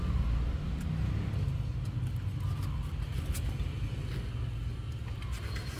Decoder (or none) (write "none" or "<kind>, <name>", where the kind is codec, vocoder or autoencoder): none